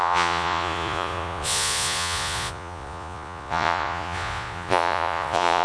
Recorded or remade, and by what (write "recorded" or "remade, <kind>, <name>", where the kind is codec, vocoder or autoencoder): remade, vocoder, Vocos